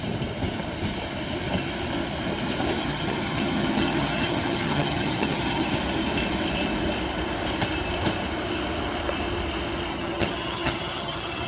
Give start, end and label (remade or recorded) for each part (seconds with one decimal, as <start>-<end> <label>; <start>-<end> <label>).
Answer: 0.0-2.8 recorded; 2.8-5.7 remade; 5.7-9.9 recorded; 9.9-11.5 remade